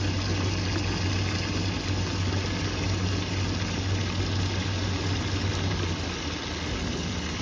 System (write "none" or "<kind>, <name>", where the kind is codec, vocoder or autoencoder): none